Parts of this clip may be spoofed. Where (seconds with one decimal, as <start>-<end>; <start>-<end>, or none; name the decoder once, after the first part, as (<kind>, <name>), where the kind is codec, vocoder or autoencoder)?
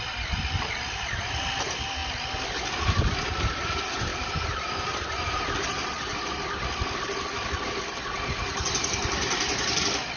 4.1-5.4 (vocoder, BigVGAN v2)